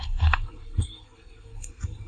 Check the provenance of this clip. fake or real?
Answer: fake